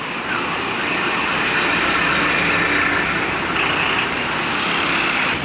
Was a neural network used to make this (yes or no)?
no